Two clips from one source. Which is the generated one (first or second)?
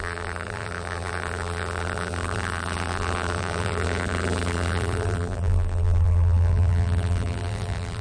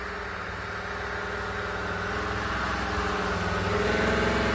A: first